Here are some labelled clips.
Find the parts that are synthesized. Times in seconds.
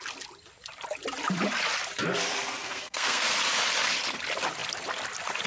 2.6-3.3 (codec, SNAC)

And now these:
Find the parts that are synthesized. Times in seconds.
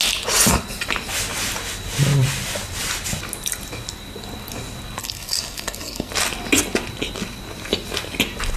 5.0-6.1 (codec, SNAC)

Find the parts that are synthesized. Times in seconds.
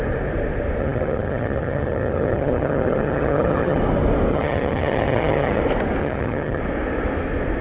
0.8-3.8 (vocoder, HiFi-GAN); 4.3-5.6; 6.0-6.6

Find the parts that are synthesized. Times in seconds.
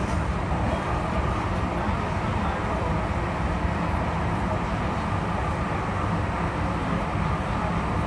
none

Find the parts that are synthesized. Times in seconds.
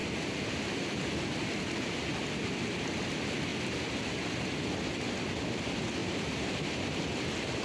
0.0-0.7 (vocoder, BigVGAN v2); 3.5-4.7; 6.0-7.0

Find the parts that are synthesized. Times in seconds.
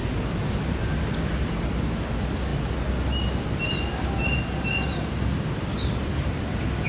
none